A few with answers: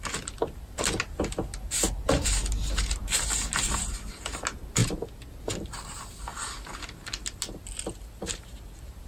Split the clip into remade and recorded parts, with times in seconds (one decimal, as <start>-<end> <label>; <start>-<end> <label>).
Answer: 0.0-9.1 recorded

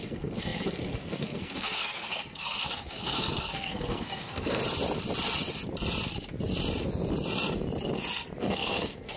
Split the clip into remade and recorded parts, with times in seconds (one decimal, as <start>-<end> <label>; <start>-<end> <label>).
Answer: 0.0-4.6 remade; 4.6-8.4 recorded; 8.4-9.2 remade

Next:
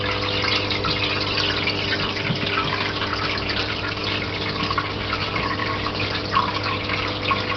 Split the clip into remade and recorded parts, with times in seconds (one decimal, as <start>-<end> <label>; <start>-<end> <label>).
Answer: 0.0-7.6 recorded

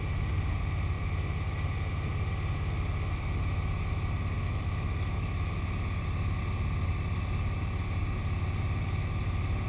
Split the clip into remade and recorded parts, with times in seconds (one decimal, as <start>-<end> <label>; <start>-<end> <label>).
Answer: 0.0-4.4 recorded; 4.4-5.5 remade; 5.5-9.7 recorded